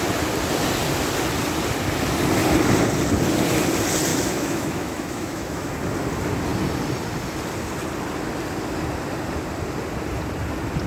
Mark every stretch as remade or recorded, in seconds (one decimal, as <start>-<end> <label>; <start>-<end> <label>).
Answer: 0.0-4.1 recorded; 4.1-5.7 remade; 5.7-10.9 recorded